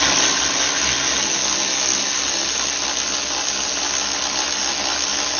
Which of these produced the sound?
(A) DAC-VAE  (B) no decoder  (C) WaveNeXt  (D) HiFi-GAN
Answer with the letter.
B